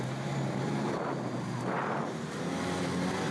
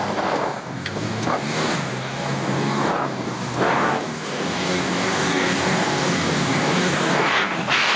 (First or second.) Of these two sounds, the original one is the first